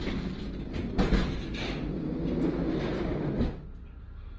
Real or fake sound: real